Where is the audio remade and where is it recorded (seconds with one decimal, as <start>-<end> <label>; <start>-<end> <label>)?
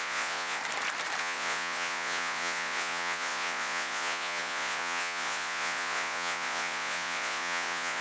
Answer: 0.0-0.6 remade; 0.6-1.2 recorded; 1.2-8.0 remade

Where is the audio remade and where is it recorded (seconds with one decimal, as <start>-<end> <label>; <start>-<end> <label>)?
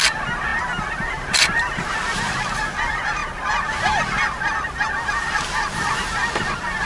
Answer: 0.0-6.9 recorded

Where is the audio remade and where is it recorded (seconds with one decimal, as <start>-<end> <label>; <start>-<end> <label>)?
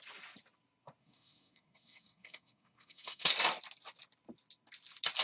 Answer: 0.0-1.0 recorded; 1.0-3.3 remade; 3.3-5.2 recorded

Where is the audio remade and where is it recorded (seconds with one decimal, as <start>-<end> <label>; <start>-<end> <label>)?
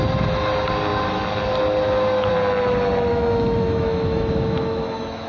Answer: 0.0-3.1 recorded; 3.1-5.3 remade